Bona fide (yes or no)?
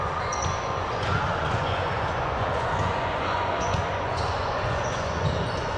no